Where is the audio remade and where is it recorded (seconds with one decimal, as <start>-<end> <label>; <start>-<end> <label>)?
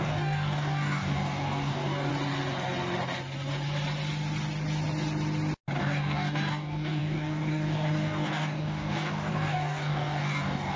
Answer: 0.0-2.1 remade; 2.1-5.8 recorded; 5.8-10.8 remade